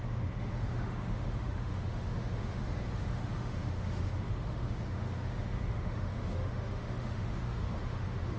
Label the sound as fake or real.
fake